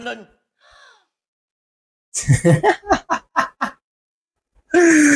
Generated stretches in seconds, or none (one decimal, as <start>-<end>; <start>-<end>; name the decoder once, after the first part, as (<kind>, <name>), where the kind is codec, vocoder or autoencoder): 3.1-5.2 (vocoder, BigVGAN v2)